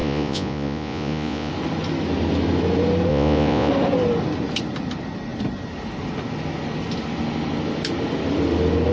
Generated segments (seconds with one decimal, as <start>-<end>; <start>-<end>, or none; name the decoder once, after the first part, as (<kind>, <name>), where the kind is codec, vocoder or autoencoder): 0.0-1.5 (vocoder, Vocos); 3.1-3.7